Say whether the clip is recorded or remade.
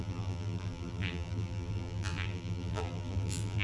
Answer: remade